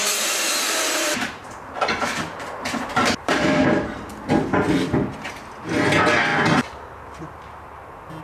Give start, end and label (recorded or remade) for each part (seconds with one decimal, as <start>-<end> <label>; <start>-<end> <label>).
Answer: 0.0-4.1 remade; 4.1-8.2 recorded